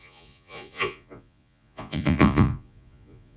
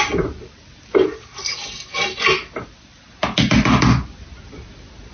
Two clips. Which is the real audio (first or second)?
second